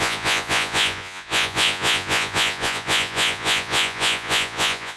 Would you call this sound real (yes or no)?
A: no